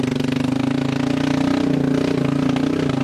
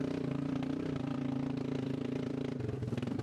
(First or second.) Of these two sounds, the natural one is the first